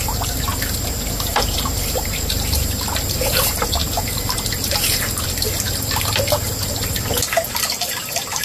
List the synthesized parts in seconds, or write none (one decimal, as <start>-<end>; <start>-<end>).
0.0-0.5; 1.3-3.8